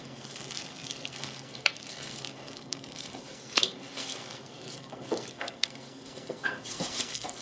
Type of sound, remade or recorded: remade